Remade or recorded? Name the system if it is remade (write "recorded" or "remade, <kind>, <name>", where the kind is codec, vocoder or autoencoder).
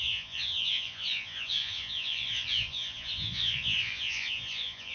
remade, vocoder, Vocos